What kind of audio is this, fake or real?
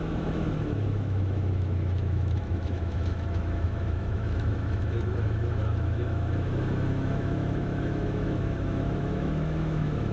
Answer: fake